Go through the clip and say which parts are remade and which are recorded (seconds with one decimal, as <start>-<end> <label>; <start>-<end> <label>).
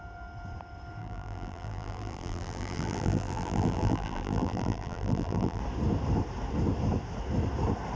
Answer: 0.0-1.0 recorded; 1.0-5.6 remade; 5.6-8.0 recorded